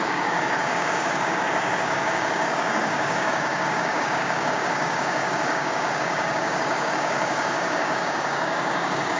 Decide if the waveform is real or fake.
fake